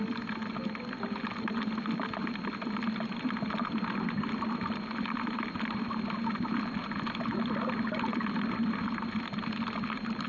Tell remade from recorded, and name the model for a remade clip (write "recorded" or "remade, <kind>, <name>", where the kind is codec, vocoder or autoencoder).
recorded